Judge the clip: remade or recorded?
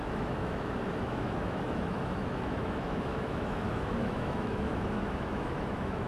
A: remade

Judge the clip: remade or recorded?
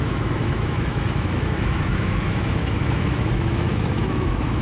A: remade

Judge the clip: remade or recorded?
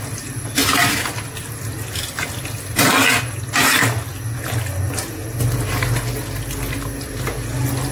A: recorded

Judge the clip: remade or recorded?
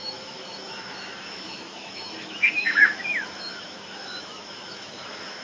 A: remade